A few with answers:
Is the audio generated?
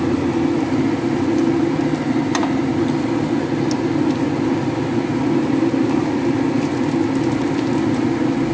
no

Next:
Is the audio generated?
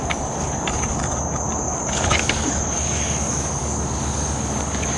yes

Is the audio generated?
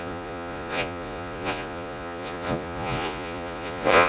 yes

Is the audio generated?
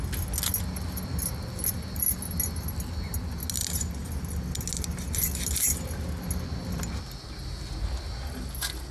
no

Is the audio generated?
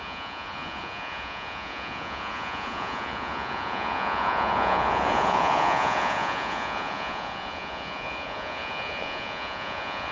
yes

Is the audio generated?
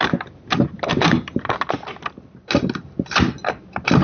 no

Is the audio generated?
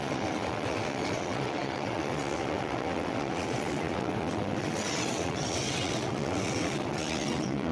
yes